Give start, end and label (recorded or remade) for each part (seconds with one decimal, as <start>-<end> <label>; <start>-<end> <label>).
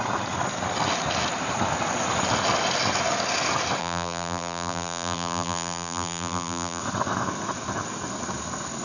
0.0-3.8 recorded; 3.8-6.8 remade; 6.8-8.8 recorded